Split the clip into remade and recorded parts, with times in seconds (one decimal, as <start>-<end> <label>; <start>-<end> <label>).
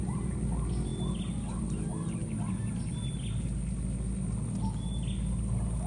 0.0-5.9 recorded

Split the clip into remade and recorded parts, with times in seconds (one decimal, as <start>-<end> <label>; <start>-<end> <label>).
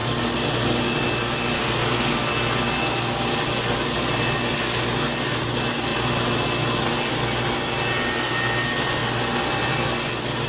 0.0-10.5 recorded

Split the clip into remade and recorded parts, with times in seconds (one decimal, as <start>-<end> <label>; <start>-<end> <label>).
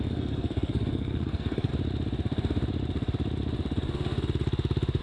0.0-1.7 remade; 1.7-5.0 recorded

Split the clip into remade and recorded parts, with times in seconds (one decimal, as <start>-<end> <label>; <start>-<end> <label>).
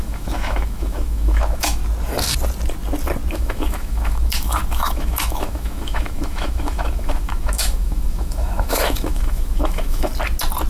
0.0-1.8 remade; 1.8-3.3 recorded; 3.3-10.1 remade; 10.1-10.7 recorded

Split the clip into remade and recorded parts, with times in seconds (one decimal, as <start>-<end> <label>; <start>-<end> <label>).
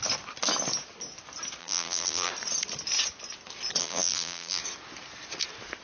0.0-1.6 recorded; 1.6-2.3 remade; 2.3-3.8 recorded; 3.8-4.6 remade; 4.6-5.8 recorded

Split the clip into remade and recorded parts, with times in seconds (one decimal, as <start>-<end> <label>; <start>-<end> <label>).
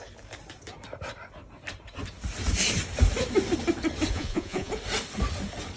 0.0-4.1 recorded; 4.1-4.7 remade; 4.7-5.8 recorded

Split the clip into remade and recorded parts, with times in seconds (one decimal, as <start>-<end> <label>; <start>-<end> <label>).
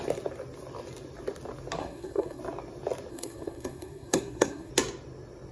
0.0-1.8 recorded; 1.8-2.4 remade; 2.4-3.1 recorded; 3.1-4.7 remade; 4.7-5.5 recorded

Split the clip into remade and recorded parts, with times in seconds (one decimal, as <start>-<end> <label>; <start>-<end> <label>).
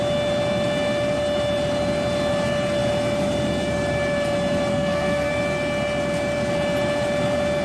0.0-4.7 recorded; 4.7-5.3 remade; 5.3-7.6 recorded